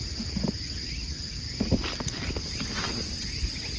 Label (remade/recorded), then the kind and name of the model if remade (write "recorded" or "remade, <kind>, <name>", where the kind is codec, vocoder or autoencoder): recorded